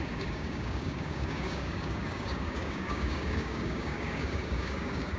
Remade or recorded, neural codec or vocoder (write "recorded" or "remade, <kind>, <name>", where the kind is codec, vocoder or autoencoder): remade, codec, DAC